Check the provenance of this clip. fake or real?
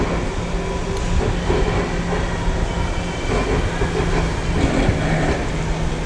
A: real